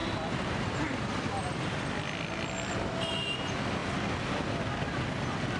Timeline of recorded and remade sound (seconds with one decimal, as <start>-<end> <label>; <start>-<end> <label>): 0.0-5.6 recorded